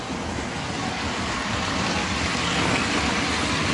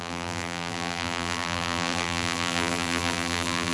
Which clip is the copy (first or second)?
second